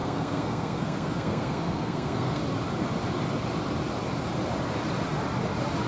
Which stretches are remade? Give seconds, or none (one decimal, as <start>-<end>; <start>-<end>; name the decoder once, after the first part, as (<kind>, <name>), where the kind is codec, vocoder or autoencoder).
0.0-2.4 (codec, SNAC)